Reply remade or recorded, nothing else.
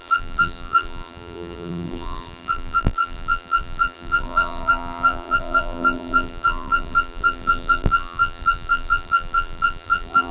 remade